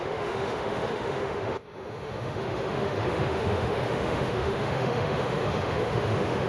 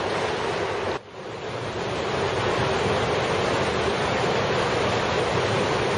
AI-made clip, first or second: first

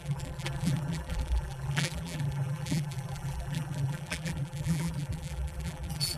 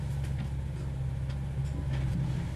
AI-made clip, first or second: first